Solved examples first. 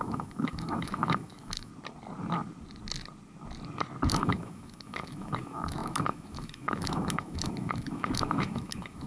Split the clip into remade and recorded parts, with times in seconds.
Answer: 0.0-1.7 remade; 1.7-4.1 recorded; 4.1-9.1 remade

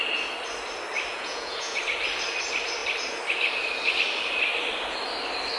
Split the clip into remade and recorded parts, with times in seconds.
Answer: 0.0-1.1 recorded; 1.1-1.8 remade; 1.8-5.6 recorded

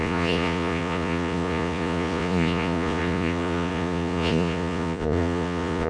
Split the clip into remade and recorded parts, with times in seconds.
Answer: 0.0-5.9 remade